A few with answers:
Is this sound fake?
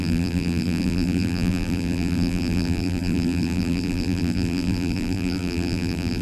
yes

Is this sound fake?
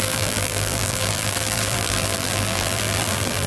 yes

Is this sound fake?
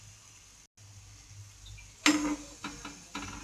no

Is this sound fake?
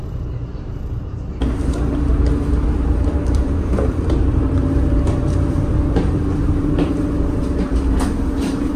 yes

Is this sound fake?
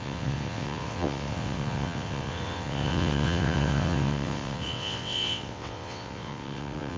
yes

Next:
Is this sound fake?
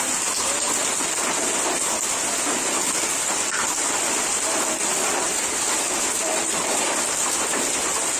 no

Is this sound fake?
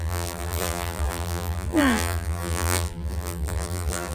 yes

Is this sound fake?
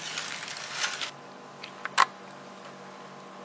no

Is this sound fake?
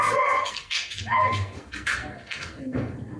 yes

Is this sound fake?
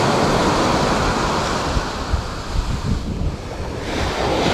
no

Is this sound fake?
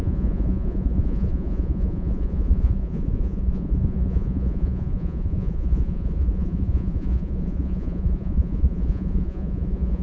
yes